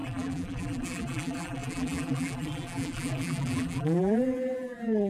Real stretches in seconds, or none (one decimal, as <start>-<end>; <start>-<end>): none